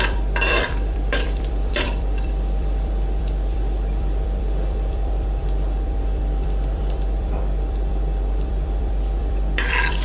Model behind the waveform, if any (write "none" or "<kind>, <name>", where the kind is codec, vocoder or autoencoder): vocoder, BigVGAN v2